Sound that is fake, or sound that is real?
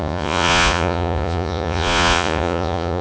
fake